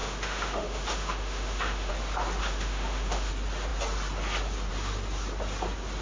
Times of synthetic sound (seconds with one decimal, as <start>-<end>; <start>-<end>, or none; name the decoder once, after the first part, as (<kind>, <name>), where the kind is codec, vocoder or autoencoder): 0.0-1.9 (autoencoder, DAC-VAE); 2.4-3.3